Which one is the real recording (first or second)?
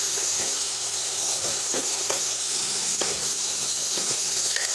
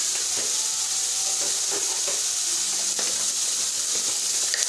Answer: second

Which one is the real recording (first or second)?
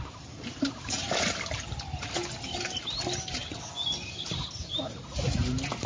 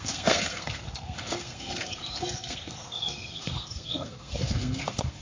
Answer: first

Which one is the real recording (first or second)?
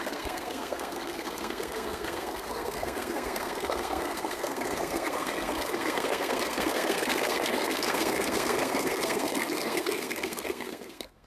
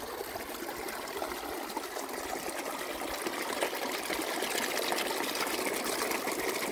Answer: second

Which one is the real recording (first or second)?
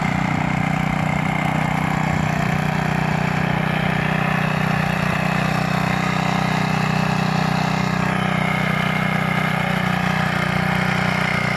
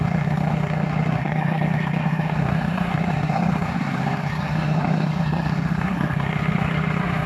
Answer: first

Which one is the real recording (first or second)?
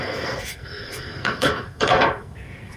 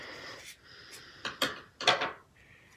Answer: second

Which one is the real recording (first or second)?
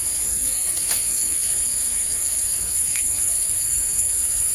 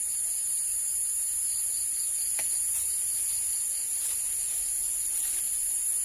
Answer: second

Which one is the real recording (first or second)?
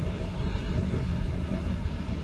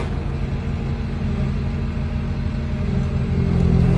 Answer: second